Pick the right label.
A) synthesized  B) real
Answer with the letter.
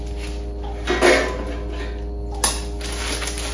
B